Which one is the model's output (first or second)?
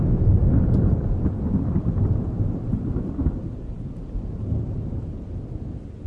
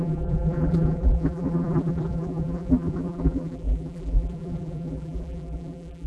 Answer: second